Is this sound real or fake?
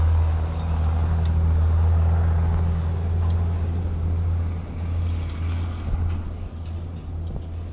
real